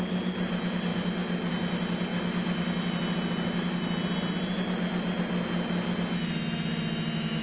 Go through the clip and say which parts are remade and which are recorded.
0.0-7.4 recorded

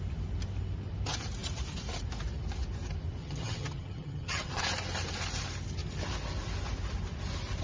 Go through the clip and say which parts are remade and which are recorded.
0.0-3.2 recorded; 3.2-4.6 remade; 4.6-7.6 recorded

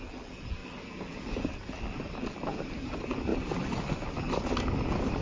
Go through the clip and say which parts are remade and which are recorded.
0.0-5.2 recorded

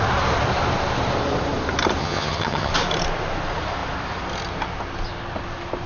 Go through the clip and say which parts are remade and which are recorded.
0.0-2.0 recorded; 2.0-2.7 remade; 2.7-5.9 recorded